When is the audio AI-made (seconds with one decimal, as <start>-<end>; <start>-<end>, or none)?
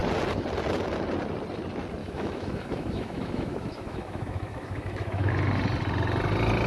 2.0-5.3